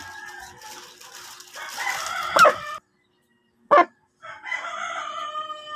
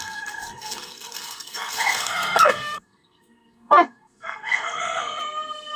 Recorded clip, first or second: first